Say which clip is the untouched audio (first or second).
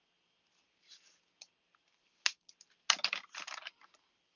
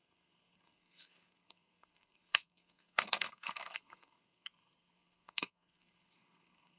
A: first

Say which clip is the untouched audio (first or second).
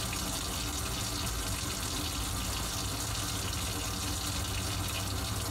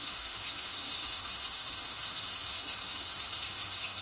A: first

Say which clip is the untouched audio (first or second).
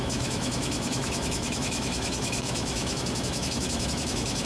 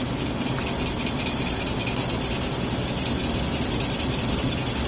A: second